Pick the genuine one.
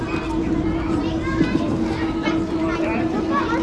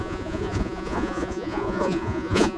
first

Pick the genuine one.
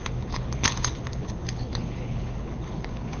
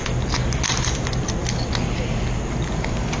second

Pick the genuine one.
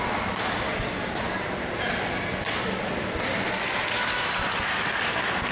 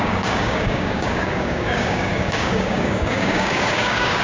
first